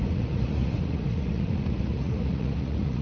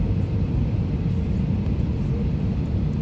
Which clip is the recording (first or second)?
second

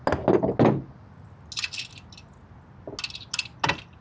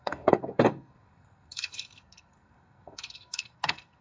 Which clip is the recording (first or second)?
first